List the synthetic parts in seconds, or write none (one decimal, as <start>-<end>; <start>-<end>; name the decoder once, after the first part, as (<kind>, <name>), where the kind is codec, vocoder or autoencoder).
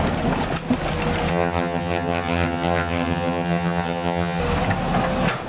1.3-4.4 (vocoder, HiFi-GAN)